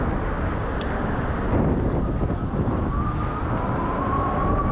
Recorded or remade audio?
recorded